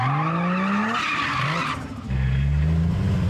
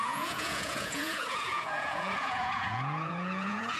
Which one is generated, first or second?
second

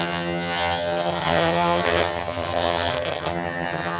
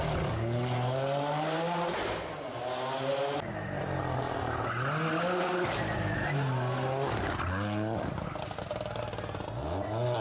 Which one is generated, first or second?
first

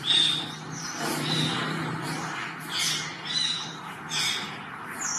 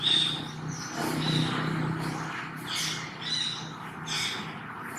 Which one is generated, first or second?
first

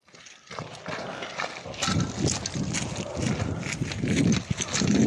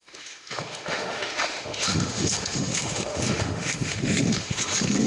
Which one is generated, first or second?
second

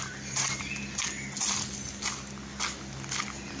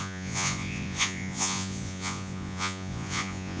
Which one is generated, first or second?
second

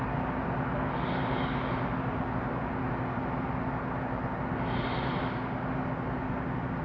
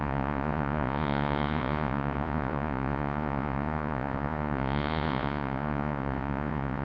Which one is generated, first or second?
second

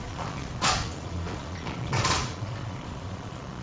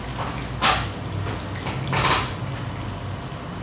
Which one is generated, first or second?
first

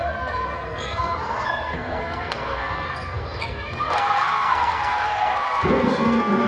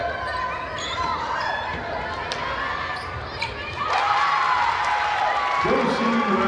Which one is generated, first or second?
first